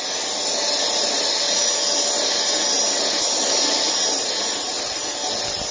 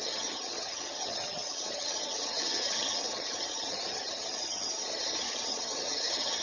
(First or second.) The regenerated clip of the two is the second